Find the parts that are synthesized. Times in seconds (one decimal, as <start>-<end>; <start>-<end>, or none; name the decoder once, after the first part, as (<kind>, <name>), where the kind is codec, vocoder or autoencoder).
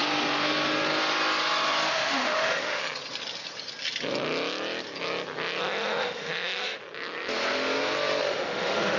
1.9-2.8 (autoencoder, DAC-VAE); 5.6-6.8; 8.2-9.0